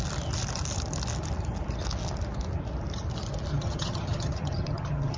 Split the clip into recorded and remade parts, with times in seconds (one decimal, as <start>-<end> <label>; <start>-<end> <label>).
0.0-3.5 recorded; 3.5-5.2 remade